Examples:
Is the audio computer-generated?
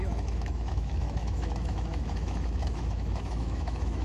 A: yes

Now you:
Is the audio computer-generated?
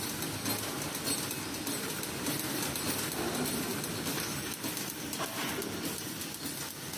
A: no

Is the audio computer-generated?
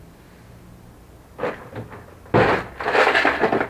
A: no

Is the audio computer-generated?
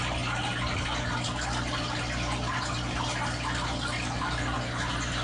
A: no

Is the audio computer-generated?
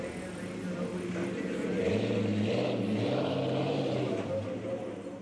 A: no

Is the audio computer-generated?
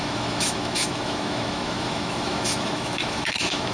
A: yes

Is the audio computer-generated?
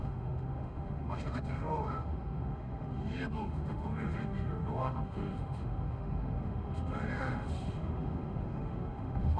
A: yes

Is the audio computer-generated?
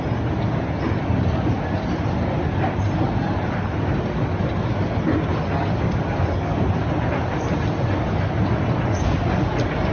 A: no